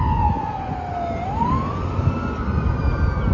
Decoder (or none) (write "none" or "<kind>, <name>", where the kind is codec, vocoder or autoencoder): none